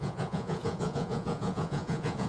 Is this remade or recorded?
remade